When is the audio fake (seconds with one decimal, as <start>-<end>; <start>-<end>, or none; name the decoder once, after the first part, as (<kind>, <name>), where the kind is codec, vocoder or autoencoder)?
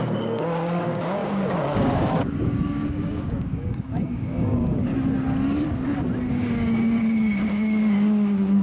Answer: 0.0-4.9 (codec, DAC); 6.3-8.6